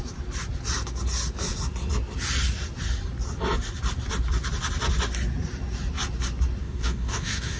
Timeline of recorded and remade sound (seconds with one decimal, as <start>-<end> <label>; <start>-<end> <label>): 0.0-6.6 recorded; 6.6-7.6 remade